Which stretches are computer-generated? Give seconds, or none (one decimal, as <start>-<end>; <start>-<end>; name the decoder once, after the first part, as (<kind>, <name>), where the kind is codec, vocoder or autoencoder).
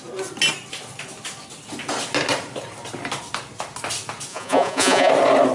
4.3-5.1 (vocoder, Vocos)